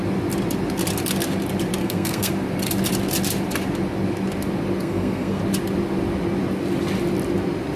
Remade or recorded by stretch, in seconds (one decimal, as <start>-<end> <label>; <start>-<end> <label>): 0.0-1.8 recorded; 1.8-2.3 remade; 2.3-4.8 recorded; 4.8-5.4 remade; 5.4-7.8 recorded